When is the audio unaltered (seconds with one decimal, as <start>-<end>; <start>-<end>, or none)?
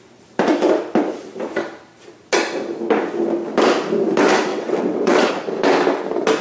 0.0-4.5; 5.3-6.4